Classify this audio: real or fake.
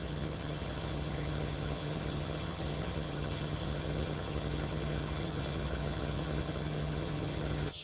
fake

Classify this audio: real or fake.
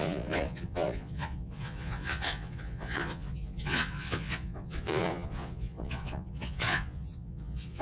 fake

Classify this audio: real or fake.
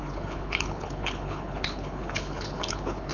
fake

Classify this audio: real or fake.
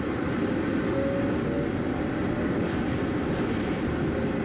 real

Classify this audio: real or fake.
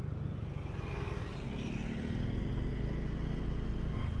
real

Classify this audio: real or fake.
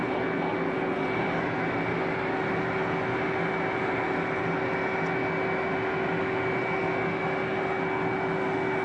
real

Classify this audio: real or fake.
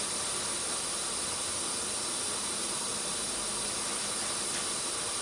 real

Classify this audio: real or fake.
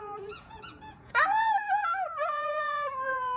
fake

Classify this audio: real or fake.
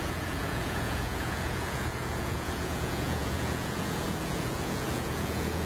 fake